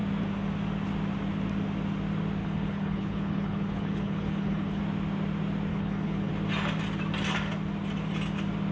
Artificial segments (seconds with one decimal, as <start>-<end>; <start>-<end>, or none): 2.4-4.8; 5.7-6.3